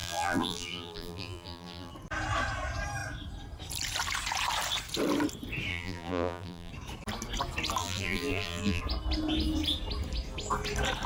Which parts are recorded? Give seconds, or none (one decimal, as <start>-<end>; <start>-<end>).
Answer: 1.9-5.7; 6.7-7.8; 8.8-11.1